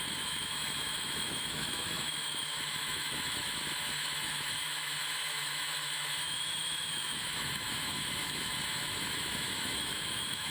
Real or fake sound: fake